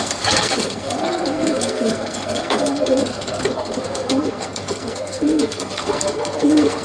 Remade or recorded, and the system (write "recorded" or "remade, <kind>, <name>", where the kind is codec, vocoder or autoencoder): remade, codec, SNAC